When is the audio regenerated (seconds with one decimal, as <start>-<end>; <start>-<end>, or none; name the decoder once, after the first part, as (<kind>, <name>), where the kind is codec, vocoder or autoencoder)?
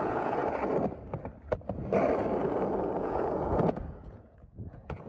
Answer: 0.0-0.4 (vocoder, Vocos); 3.0-5.1